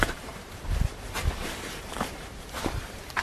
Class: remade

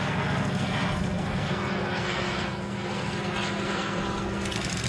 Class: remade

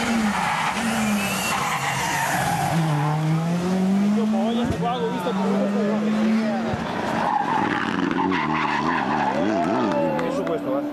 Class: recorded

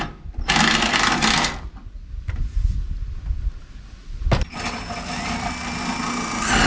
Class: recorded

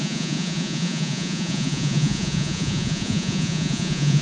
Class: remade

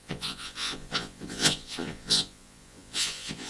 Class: remade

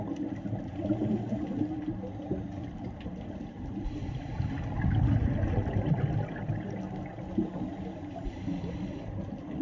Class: recorded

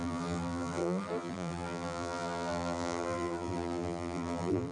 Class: remade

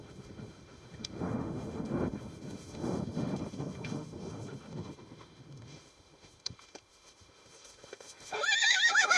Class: remade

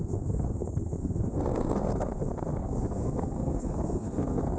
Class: remade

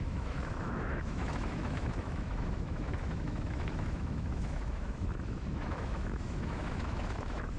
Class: remade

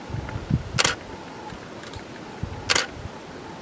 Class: recorded